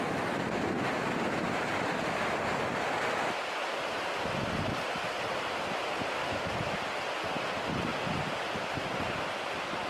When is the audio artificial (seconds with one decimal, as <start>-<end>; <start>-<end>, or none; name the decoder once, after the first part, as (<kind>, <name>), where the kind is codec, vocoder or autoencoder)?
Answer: 6.2-6.8 (autoencoder, DAC-VAE)